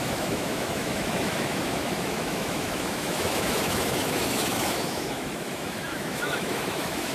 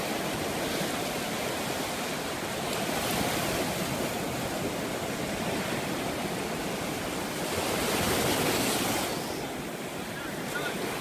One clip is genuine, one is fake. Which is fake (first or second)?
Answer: first